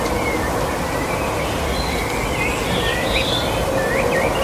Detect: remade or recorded recorded